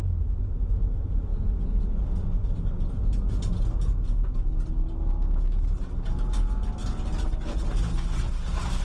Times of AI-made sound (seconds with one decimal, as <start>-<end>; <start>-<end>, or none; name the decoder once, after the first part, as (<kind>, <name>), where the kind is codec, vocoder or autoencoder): none